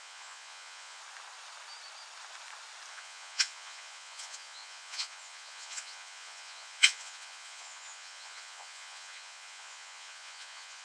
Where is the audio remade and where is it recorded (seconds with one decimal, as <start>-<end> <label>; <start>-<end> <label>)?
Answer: 0.0-1.0 remade; 1.0-2.9 recorded; 2.9-10.8 remade